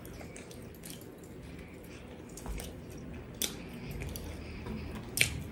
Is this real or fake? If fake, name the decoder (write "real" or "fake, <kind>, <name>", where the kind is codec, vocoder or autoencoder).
real